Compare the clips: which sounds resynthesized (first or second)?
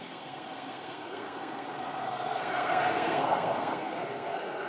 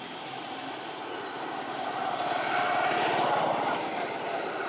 first